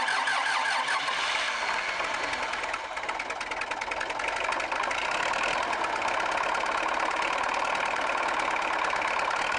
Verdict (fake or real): real